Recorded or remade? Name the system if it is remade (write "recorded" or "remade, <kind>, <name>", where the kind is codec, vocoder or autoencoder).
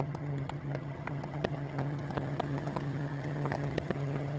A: remade, vocoder, HiFi-GAN